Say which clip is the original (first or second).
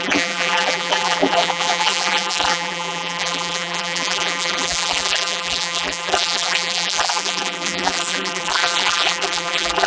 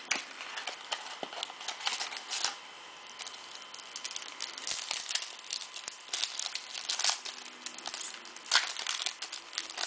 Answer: second